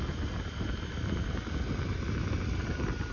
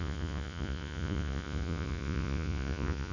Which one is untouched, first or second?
first